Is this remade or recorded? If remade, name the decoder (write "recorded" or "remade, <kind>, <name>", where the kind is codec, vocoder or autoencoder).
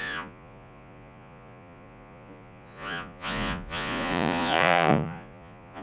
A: remade, vocoder, Vocos